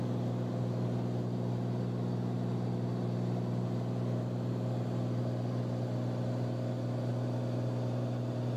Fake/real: fake